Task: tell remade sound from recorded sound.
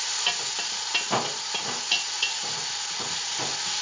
recorded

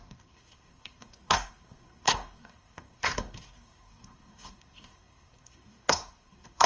remade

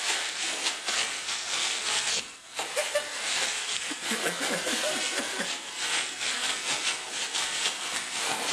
remade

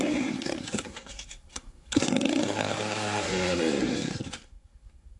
remade